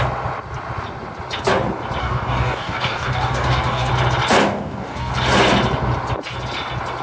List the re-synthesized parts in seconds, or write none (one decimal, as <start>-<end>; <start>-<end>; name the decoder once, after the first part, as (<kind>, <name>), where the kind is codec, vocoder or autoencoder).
2.0-3.9 (codec, DAC); 4.4-5.1